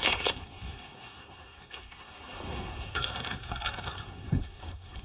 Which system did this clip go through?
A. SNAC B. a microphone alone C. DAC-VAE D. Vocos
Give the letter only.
A